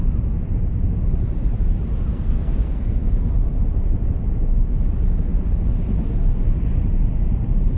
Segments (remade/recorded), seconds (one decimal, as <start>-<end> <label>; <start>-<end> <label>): 0.0-2.1 recorded; 2.1-3.1 remade; 3.1-7.8 recorded